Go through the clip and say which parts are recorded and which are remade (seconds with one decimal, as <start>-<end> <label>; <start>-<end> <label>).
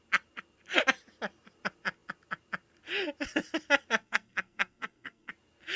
0.0-4.0 recorded; 4.0-5.3 remade; 5.3-5.8 recorded